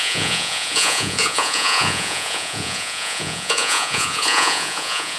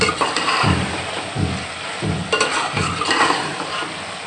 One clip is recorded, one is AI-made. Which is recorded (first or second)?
second